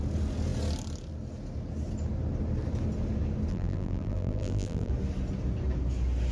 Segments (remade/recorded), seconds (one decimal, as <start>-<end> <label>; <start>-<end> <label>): 0.0-3.5 recorded; 3.5-4.9 remade; 4.9-6.3 recorded